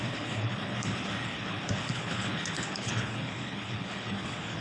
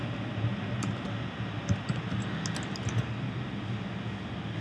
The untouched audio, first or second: second